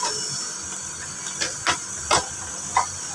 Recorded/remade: recorded